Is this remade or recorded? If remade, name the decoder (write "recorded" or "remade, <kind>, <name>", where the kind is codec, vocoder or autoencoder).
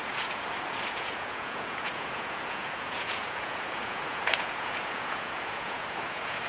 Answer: remade, vocoder, Vocos